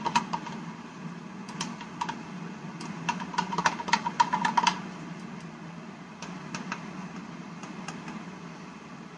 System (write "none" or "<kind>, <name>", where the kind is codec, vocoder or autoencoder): none